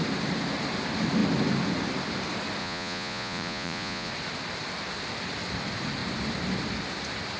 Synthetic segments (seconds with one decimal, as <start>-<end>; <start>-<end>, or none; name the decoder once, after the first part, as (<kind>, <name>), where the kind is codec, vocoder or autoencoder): 2.6-4.1 (vocoder, Vocos)